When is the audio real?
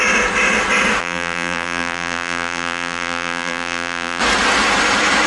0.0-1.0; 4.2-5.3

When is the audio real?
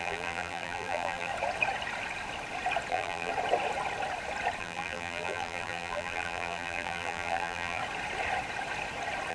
1.3-2.9; 3.3-4.6; 7.8-9.3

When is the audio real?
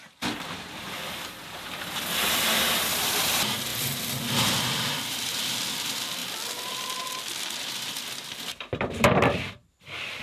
6.2-7.8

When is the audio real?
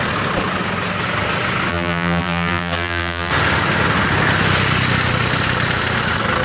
0.0-1.7; 3.3-6.4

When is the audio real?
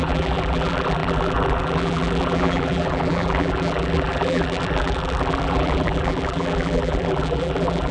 none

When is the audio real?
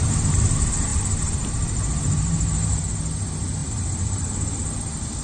0.0-0.9; 2.7-3.6; 4.6-5.2